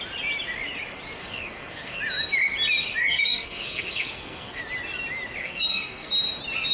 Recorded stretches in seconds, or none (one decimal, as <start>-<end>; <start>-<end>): 0.0-1.2; 2.0-3.0; 4.6-5.4; 6.1-6.7